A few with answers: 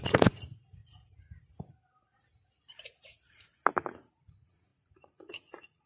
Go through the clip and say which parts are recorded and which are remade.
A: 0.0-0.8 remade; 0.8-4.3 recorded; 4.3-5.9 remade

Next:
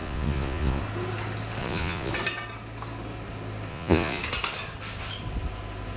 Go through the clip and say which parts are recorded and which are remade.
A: 0.0-0.8 remade; 0.8-1.6 recorded; 1.6-2.1 remade; 2.1-3.7 recorded; 3.7-4.2 remade; 4.2-6.0 recorded

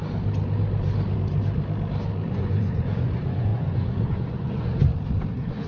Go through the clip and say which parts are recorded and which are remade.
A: 0.0-2.3 recorded; 2.3-4.8 remade; 4.8-5.3 recorded; 5.3-5.7 remade

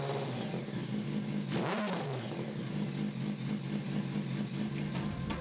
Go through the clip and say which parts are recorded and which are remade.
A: 0.0-5.4 recorded

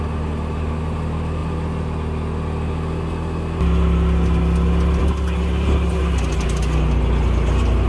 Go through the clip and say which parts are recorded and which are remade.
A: 0.0-7.9 recorded

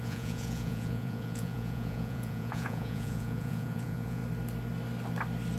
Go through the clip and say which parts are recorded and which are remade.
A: 0.0-4.2 remade; 4.2-5.6 recorded

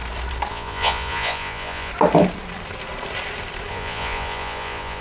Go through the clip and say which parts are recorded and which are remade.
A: 0.0-0.5 recorded; 0.5-1.9 remade; 1.9-3.7 recorded; 3.7-5.0 remade

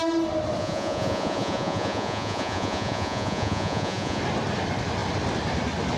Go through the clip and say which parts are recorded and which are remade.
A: 0.0-0.6 recorded; 0.6-4.2 remade; 4.2-6.0 recorded